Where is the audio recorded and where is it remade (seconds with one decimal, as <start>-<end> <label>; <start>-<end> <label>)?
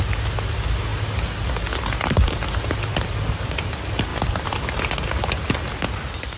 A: 0.0-6.4 recorded